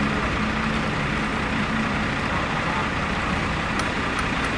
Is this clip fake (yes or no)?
yes